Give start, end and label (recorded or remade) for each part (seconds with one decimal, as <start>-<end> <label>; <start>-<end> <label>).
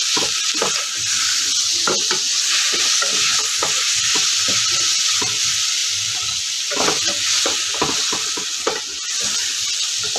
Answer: 0.0-10.2 recorded